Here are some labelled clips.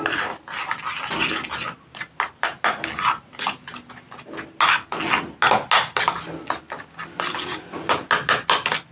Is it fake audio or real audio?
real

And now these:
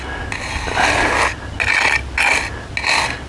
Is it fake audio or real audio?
real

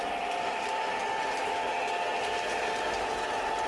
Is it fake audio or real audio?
real